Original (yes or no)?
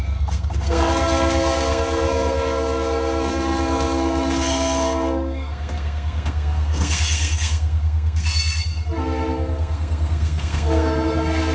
no